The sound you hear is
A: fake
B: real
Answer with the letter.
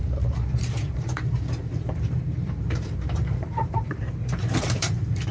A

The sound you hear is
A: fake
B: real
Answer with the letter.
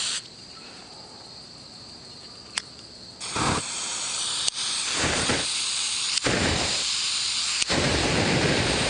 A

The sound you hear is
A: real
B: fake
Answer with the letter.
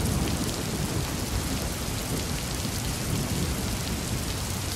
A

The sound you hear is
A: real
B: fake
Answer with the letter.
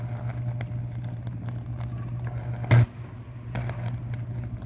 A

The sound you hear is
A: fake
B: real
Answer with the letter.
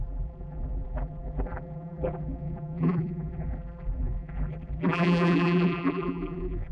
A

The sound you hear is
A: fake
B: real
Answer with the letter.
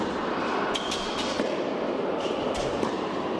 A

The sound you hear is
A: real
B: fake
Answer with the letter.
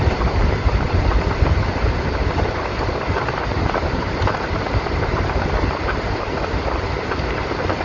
B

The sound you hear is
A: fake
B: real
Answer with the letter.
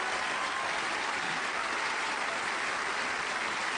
B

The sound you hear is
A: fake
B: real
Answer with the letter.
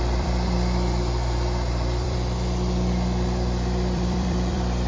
A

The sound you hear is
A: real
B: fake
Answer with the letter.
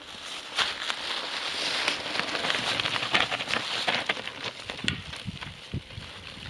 A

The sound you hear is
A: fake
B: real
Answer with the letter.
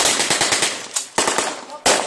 B